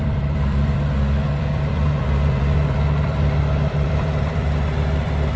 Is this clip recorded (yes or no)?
no